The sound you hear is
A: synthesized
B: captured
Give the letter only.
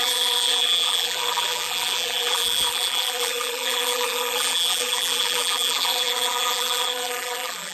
A